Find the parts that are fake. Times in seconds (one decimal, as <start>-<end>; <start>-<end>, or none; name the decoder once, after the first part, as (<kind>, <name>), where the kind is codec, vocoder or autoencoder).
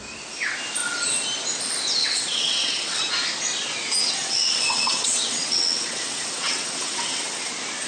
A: 2.0-3.0 (vocoder, WaveNeXt); 4.0-7.5